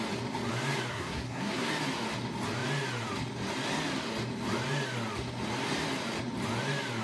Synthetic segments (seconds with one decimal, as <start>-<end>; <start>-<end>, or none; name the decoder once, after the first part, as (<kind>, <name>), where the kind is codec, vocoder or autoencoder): 0.9-1.7 (codec, SNAC)